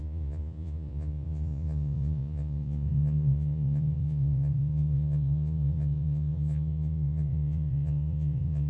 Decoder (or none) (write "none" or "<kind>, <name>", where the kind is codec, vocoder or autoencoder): vocoder, Vocos